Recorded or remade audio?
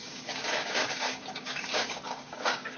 remade